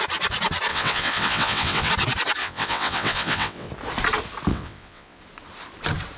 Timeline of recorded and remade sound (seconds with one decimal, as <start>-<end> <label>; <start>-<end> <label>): 0.0-0.7 recorded; 0.7-1.9 remade; 1.9-2.4 recorded; 2.4-3.7 remade; 3.7-4.5 recorded; 4.5-5.2 remade; 5.2-6.2 recorded